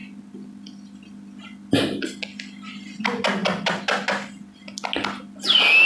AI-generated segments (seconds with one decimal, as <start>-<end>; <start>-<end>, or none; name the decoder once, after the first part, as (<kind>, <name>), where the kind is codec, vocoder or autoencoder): none